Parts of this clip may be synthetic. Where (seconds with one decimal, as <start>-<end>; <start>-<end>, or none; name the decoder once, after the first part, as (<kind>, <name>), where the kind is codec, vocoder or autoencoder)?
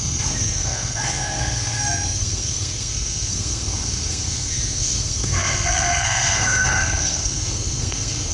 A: 0.0-8.3 (codec, SNAC)